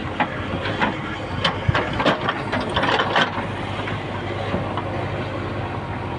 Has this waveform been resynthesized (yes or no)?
no